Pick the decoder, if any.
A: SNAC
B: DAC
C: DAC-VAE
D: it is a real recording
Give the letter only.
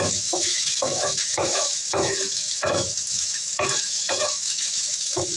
C